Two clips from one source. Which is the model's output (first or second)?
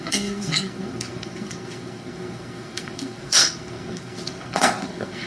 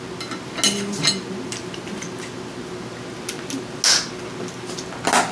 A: first